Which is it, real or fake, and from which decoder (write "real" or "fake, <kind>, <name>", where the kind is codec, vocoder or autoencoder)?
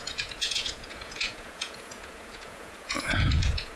fake, vocoder, Vocos